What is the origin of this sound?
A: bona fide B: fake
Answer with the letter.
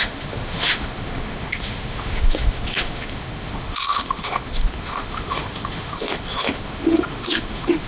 B